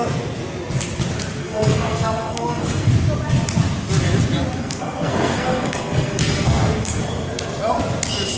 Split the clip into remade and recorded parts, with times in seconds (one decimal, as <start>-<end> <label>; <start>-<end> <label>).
0.0-1.4 recorded; 1.4-2.9 remade; 2.9-4.6 recorded; 4.6-7.0 remade; 7.0-8.4 recorded

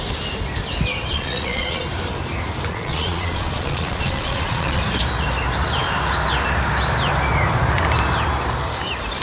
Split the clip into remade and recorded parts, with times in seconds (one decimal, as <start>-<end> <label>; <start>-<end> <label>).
0.0-1.1 recorded; 1.1-1.8 remade; 1.8-2.7 recorded; 2.7-4.8 remade; 4.8-9.2 recorded

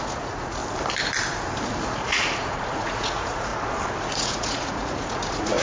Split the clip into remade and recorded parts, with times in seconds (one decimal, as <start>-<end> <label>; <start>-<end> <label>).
0.0-0.6 remade; 0.6-1.8 recorded; 1.8-3.5 remade; 3.5-4.0 recorded; 4.0-5.6 remade

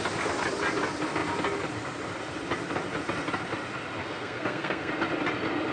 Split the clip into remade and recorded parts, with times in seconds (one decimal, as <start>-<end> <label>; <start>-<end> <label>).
0.0-4.0 recorded; 4.0-4.9 remade; 4.9-5.7 recorded